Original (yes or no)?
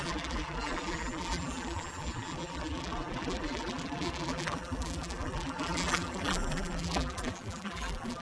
no